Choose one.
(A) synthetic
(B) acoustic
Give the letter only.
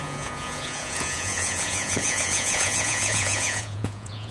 A